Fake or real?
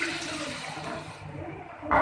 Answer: real